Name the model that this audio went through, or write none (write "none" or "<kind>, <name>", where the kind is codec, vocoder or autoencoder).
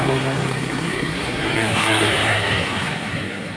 codec, SNAC